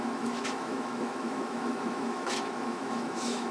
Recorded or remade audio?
remade